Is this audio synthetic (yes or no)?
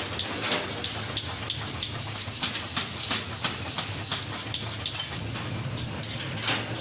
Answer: no